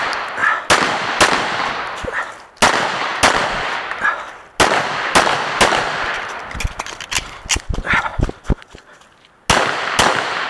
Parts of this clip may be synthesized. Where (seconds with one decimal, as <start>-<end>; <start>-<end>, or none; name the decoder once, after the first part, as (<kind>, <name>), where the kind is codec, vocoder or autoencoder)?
none